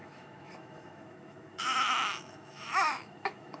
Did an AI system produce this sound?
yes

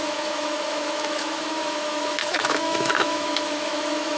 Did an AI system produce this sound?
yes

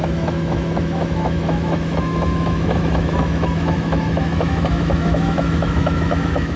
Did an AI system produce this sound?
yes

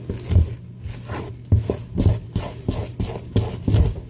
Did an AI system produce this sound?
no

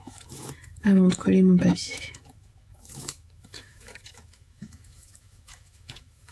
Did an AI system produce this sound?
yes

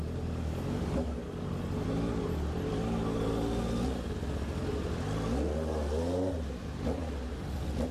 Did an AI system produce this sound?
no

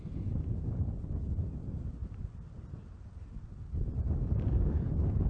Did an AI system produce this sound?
no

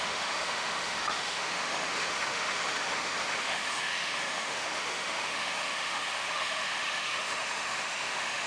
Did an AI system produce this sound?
yes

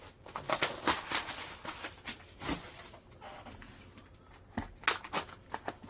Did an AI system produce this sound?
no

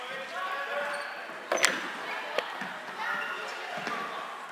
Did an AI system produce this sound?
no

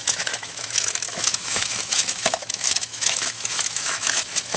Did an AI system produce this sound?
yes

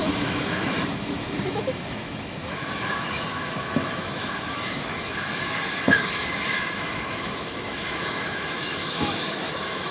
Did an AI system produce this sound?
yes